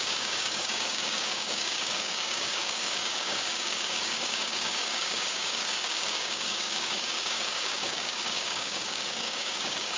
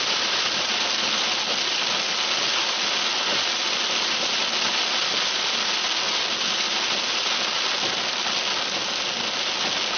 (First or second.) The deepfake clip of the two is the first